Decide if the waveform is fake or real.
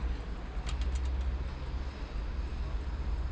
real